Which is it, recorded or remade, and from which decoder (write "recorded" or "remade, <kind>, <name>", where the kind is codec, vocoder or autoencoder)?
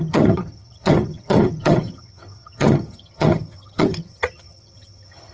remade, vocoder, HiFi-GAN